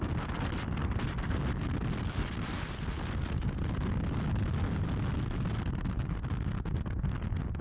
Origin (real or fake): real